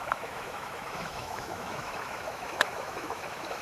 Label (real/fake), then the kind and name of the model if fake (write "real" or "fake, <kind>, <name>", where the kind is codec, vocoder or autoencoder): fake, autoencoder, DAC-VAE